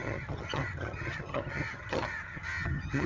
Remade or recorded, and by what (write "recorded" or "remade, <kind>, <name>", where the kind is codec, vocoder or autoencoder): remade, vocoder, HiFi-GAN